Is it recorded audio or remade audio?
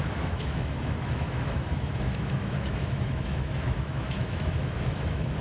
remade